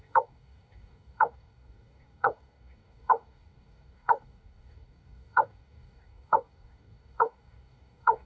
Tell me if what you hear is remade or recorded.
remade